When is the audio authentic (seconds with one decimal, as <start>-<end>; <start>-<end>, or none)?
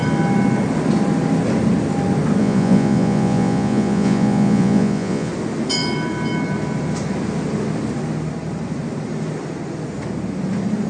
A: 0.0-2.4; 5.3-10.9